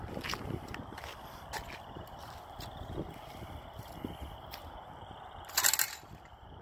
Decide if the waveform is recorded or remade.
recorded